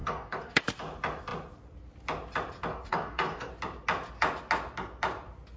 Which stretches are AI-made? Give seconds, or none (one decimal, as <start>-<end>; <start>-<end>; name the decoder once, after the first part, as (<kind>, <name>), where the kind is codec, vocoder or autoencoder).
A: 0.0-0.6 (codec, DAC); 2.7-3.5